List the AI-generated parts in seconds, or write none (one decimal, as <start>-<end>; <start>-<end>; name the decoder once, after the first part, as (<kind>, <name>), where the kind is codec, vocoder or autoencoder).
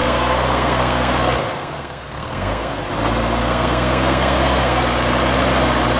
0.0-2.8 (codec, SNAC); 3.4-4.8